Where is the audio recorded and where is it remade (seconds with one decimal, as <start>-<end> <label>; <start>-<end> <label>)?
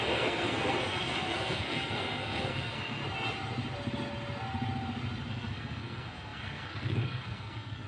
0.0-3.0 remade; 3.0-5.3 recorded; 5.3-7.9 remade